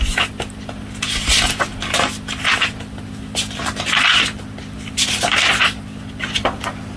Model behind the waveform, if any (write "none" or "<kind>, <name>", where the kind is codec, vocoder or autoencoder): none